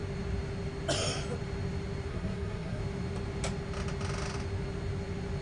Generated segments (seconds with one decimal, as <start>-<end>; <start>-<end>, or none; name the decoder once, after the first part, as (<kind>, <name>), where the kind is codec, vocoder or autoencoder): 2.1-2.8 (codec, SNAC)